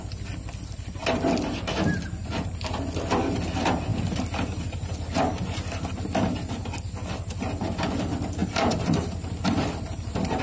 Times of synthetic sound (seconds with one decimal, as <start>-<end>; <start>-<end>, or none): 8.4-10.4